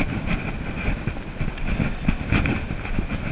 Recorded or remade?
recorded